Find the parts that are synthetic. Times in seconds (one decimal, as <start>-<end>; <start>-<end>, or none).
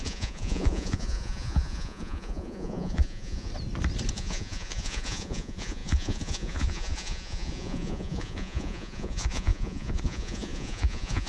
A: 0.0-3.5; 4.1-11.3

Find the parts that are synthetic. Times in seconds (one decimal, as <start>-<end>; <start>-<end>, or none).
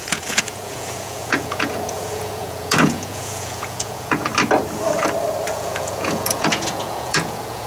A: 0.0-4.3; 5.5-7.7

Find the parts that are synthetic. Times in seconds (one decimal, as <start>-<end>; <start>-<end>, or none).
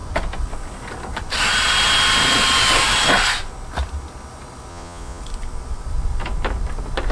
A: 4.7-5.2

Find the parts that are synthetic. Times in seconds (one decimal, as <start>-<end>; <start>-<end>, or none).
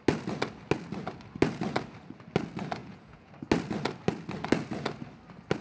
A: 2.8-3.3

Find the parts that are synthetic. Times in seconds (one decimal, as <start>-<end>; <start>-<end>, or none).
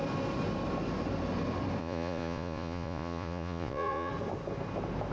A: 1.8-4.1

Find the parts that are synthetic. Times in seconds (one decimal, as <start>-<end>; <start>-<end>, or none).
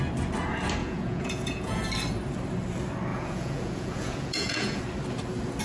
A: 0.8-1.8; 3.1-4.8